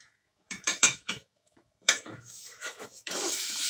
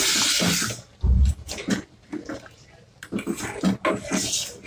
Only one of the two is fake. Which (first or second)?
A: first